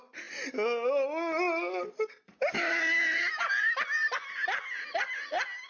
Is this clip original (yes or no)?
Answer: yes